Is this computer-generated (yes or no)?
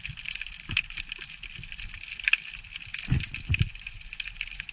no